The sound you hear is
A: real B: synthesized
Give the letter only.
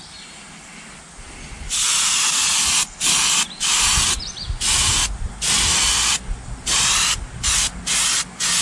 A